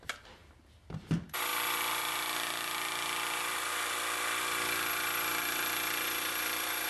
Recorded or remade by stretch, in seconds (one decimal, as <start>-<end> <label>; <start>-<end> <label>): 0.0-0.4 remade; 0.4-1.0 recorded; 1.0-1.5 remade; 1.5-4.4 recorded; 4.4-6.9 remade